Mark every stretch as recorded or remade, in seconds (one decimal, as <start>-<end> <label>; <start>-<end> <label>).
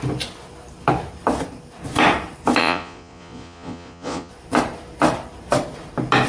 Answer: 0.0-2.6 recorded; 2.6-4.3 remade; 4.3-6.3 recorded